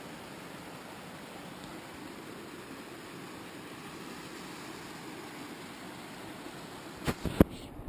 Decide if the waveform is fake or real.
real